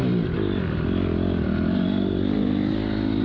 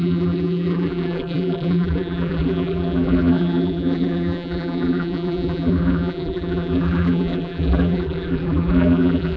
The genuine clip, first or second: first